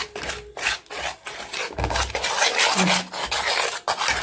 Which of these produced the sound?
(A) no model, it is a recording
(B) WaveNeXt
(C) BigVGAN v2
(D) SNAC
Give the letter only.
A